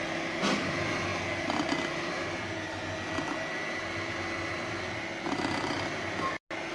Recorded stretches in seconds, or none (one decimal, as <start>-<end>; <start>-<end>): 0.0-6.7